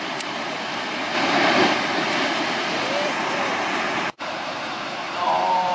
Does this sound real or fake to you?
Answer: fake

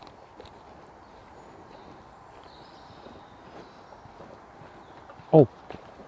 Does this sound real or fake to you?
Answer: real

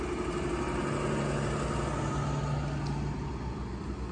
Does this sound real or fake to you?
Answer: real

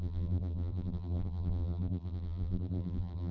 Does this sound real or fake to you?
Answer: fake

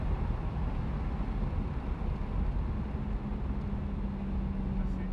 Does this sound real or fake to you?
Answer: real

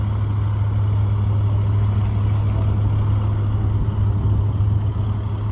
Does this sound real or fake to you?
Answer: real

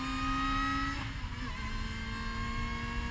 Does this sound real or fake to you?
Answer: real